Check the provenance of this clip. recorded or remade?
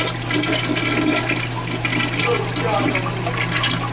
recorded